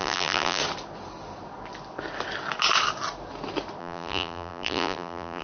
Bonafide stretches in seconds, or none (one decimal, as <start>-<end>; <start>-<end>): 0.6-3.8